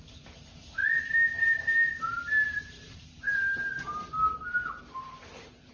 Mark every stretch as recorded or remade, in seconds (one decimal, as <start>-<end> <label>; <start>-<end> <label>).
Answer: 0.0-0.8 remade; 0.8-2.6 recorded; 2.6-3.5 remade; 3.5-4.8 recorded; 4.8-5.7 remade